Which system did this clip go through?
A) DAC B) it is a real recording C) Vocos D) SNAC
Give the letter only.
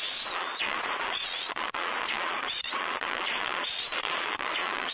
C